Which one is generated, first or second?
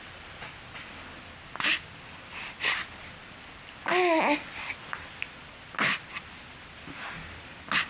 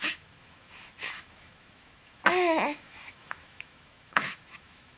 second